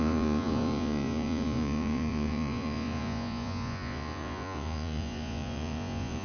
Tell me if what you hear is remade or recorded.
remade